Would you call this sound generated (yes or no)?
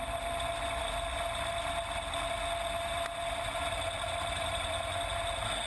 no